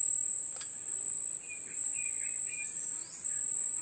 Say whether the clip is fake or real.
real